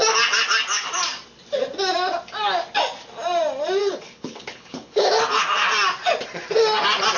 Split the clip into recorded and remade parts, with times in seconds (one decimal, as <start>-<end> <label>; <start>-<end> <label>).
0.0-3.8 recorded; 3.8-5.1 remade; 5.1-7.2 recorded